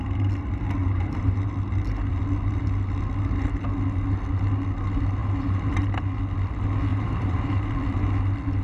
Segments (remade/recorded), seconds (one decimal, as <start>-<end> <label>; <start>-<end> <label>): 0.0-0.8 recorded; 0.8-1.5 remade; 1.5-5.2 recorded; 5.2-6.0 remade; 6.0-6.9 recorded; 6.9-7.7 remade; 7.7-8.6 recorded